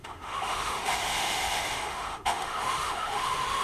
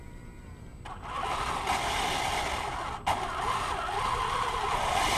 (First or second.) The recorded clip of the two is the second